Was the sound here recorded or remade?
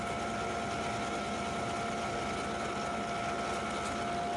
recorded